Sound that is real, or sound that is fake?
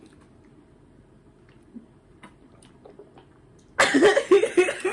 real